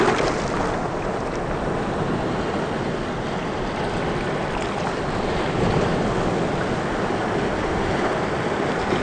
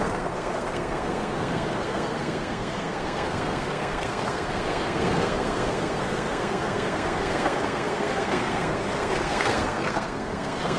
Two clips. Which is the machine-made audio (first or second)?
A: second